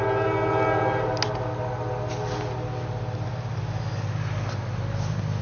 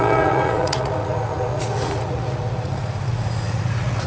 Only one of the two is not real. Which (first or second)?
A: second